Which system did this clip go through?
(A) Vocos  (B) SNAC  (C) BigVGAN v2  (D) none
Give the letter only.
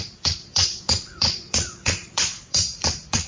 A